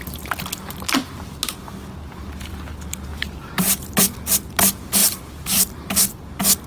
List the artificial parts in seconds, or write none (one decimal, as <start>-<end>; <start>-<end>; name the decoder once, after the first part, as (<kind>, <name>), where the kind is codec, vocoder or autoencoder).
3.1-4.0 (vocoder, BigVGAN v2); 5.0-5.7